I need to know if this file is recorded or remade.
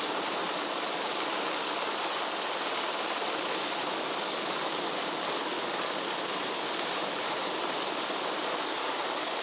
recorded